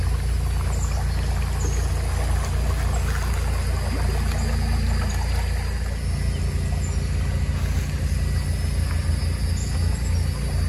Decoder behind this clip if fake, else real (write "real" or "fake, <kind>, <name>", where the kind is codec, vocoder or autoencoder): real